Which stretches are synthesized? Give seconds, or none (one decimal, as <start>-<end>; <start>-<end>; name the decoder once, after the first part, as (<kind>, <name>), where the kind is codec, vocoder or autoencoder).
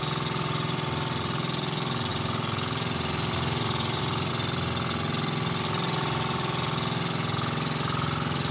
2.1-4.3 (vocoder, BigVGAN v2)